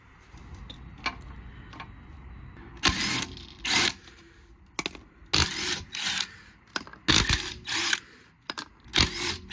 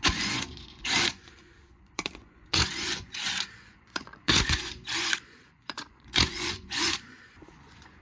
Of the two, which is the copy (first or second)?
second